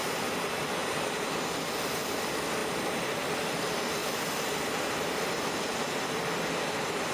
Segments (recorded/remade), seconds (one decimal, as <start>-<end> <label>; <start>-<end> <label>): 0.0-4.0 recorded; 4.0-6.1 remade; 6.1-7.1 recorded